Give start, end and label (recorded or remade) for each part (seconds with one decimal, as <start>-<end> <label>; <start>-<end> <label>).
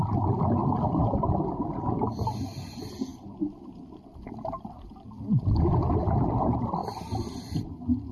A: 0.0-8.1 recorded